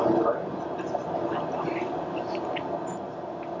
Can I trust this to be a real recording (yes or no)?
yes